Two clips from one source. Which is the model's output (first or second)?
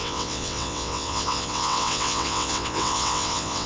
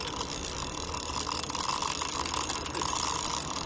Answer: first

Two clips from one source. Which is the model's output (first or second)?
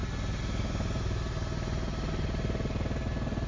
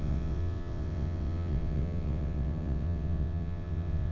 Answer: second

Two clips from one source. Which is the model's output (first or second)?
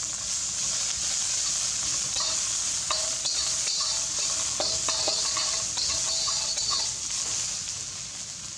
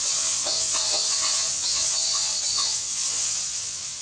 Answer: second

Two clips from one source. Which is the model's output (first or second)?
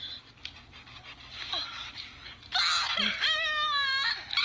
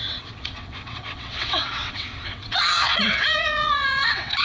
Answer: second